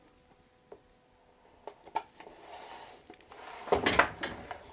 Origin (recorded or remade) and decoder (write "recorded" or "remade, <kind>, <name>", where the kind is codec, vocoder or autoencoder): recorded